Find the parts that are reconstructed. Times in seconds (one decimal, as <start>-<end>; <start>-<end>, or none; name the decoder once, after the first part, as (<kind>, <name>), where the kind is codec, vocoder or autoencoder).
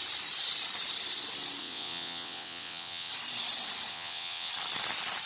1.6-3.1 (vocoder, WaveNeXt); 3.9-4.5